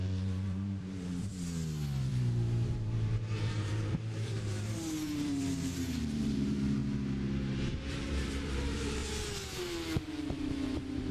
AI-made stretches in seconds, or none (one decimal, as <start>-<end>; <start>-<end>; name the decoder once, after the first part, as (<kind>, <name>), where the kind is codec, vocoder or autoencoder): 0.0-1.3 (vocoder, BigVGAN v2); 2.1-6.8; 7.9-9.0; 10.0-11.1